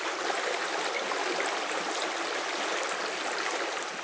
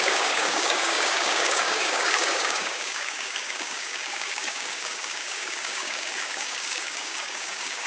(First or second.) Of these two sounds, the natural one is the first